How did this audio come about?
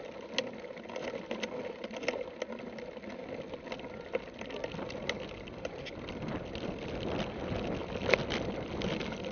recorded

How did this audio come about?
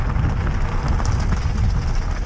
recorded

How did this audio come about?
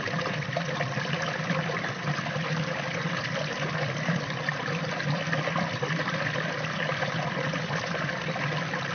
recorded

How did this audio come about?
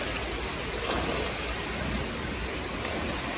recorded